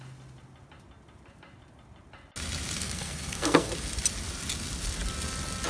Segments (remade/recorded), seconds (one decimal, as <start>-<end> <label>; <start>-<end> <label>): 0.0-2.8 recorded; 2.8-3.7 remade; 3.7-5.7 recorded